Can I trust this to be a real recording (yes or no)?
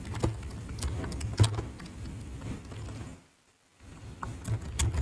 yes